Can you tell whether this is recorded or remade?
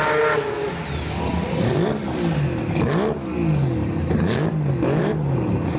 recorded